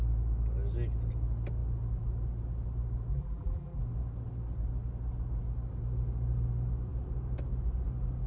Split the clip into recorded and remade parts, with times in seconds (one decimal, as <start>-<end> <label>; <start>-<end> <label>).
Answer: 0.0-3.1 recorded; 3.1-3.8 remade; 3.8-8.3 recorded